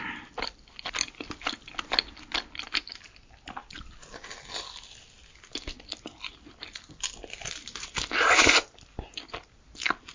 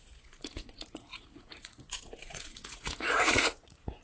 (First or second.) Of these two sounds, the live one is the first